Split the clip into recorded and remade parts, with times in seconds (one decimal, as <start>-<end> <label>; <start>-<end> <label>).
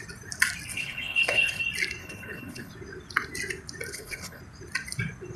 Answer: 0.0-0.7 recorded; 0.7-1.6 remade; 1.6-2.0 recorded; 2.0-2.7 remade; 2.7-3.9 recorded; 3.9-4.4 remade; 4.4-5.4 recorded